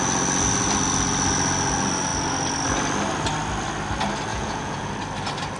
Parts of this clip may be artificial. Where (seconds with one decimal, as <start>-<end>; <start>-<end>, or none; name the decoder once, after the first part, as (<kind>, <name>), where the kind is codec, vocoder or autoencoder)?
4.3-4.9 (vocoder, Vocos)